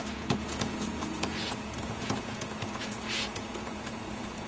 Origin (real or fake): fake